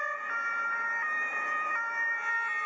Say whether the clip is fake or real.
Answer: real